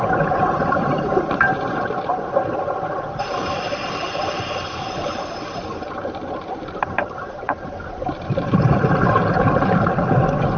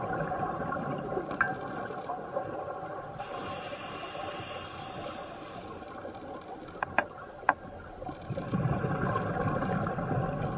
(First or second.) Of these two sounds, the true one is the second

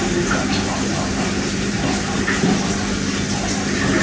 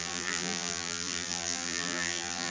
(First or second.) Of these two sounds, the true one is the first